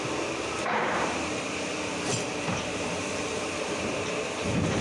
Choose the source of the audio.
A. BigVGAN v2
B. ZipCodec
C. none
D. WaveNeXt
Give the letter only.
A